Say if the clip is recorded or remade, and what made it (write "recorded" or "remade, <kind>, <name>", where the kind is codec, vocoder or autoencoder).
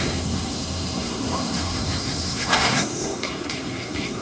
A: remade, codec, SNAC